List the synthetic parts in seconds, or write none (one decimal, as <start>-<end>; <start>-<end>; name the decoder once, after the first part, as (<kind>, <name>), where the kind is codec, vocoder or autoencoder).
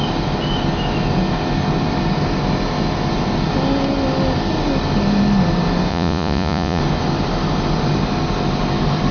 5.9-6.8 (vocoder, Vocos)